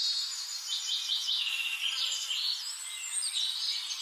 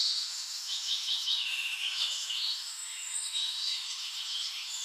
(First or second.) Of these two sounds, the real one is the first